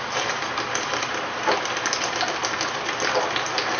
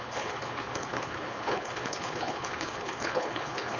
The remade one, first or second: second